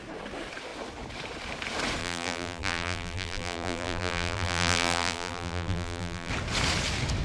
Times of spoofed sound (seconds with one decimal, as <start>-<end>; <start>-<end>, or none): 2.0-6.3